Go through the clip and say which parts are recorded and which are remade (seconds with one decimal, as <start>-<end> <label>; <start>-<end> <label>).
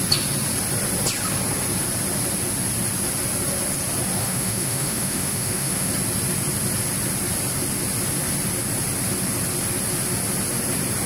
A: 0.0-4.2 recorded; 4.2-5.9 remade; 5.9-11.1 recorded